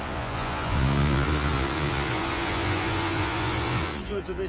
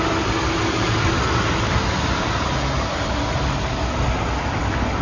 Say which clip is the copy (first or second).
first